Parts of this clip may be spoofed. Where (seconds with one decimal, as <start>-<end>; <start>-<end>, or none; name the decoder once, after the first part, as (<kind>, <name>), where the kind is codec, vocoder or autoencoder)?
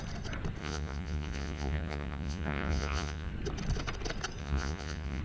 0.6-3.3 (vocoder, Vocos); 4.4-5.2